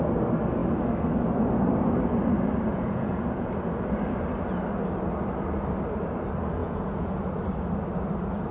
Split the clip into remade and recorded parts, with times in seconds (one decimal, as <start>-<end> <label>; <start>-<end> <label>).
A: 0.0-2.7 recorded; 2.7-3.5 remade; 3.5-6.6 recorded; 6.6-7.1 remade; 7.1-8.5 recorded